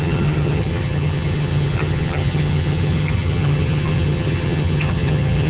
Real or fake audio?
fake